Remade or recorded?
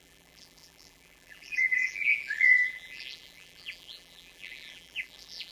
remade